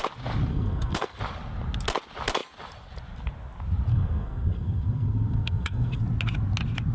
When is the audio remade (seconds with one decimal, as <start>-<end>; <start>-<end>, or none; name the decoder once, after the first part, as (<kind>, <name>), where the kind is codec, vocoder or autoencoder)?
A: 0.5-1.2 (codec, SNAC); 3.9-6.0